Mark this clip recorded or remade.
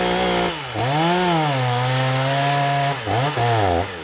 recorded